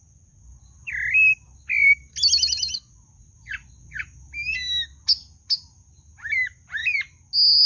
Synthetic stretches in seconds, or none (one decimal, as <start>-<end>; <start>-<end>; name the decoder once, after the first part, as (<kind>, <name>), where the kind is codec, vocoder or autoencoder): none